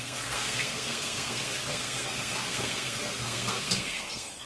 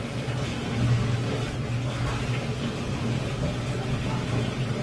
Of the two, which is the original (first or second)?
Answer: second